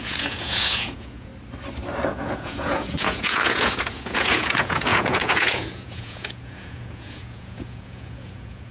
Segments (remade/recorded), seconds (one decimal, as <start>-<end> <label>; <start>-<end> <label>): 0.0-1.3 remade; 1.3-2.1 recorded; 2.1-8.7 remade